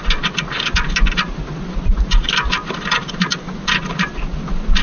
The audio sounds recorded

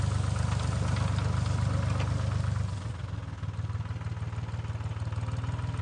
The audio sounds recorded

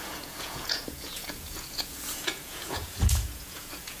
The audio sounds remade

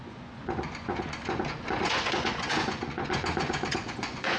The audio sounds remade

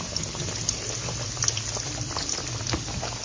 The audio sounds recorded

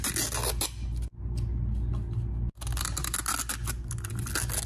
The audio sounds recorded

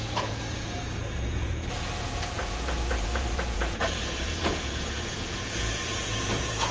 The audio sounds remade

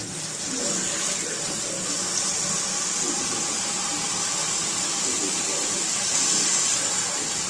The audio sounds recorded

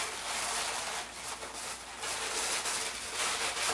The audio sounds recorded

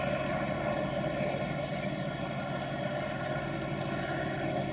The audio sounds recorded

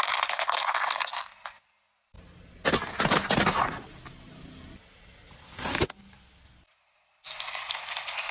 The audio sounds recorded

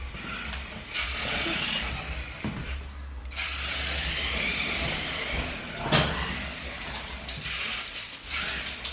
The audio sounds recorded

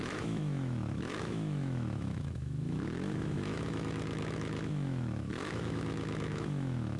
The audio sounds remade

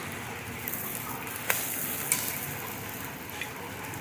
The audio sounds recorded